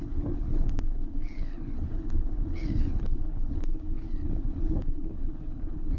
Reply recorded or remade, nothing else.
remade